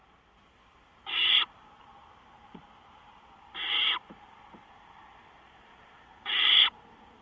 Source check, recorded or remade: remade